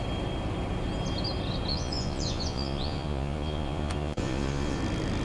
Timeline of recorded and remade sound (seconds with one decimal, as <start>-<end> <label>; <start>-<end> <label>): 0.0-1.7 recorded; 1.7-4.8 remade; 4.8-5.2 recorded